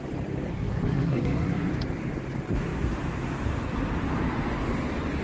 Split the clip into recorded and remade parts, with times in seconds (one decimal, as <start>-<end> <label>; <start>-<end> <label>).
0.0-0.5 recorded; 0.5-1.7 remade; 1.7-5.2 recorded